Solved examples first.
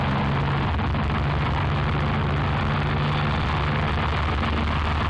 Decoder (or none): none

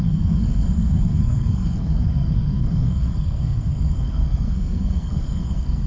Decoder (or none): codec, SNAC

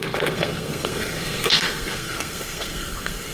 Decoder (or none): codec, SNAC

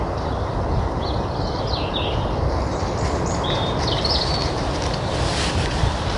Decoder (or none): none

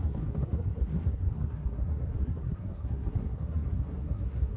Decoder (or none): codec, SNAC